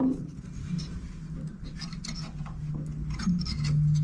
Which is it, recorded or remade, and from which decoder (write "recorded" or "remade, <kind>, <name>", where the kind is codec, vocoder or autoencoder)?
recorded